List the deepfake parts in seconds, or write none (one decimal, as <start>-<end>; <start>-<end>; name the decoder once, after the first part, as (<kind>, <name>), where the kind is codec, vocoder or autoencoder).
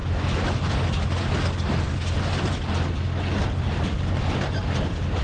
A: 0.0-0.6 (autoencoder, DAC-VAE)